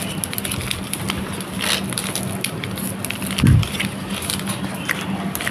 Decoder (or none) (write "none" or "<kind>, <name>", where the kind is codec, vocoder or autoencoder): none